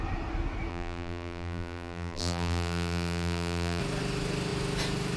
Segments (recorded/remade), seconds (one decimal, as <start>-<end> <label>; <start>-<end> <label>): 0.0-0.7 recorded; 0.7-3.8 remade; 3.8-5.2 recorded